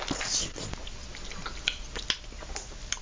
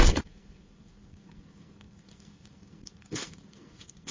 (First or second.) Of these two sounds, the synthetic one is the second